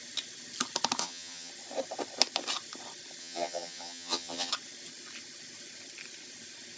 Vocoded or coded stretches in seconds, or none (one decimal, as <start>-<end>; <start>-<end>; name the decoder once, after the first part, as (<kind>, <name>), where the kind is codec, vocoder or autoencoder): 1.0-1.5 (vocoder, HiFi-GAN); 3.2-4.5